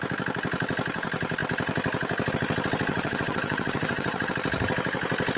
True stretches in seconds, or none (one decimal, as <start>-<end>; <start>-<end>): 0.0-2.9; 4.3-5.4